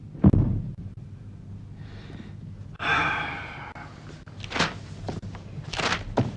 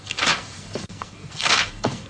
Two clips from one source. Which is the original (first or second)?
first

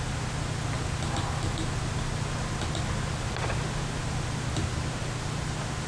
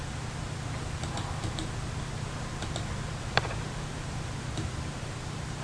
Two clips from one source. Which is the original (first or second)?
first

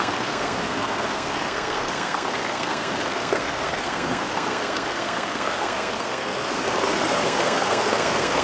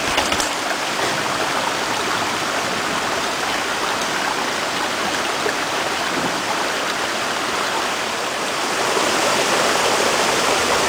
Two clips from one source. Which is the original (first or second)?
second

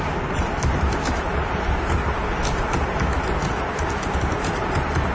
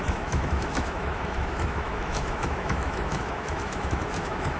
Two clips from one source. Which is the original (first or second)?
first